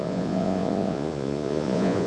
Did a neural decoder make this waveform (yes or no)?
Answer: yes